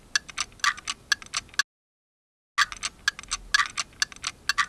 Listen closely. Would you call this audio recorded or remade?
recorded